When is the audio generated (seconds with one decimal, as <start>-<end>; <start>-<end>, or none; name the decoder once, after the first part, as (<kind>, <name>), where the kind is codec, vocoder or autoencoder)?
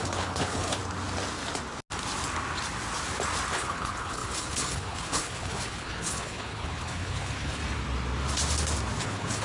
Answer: 0.0-0.8 (codec, HILCodec); 3.5-7.6; 9.0-9.4